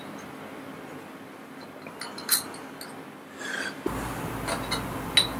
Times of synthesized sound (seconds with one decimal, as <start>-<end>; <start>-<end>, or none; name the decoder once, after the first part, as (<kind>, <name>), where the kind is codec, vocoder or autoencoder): none